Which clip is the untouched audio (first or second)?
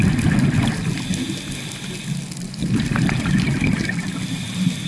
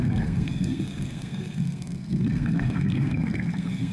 first